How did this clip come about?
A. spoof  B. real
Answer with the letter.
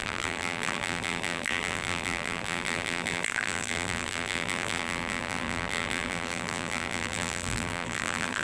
A